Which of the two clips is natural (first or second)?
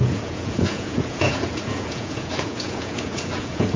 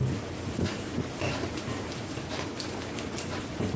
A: second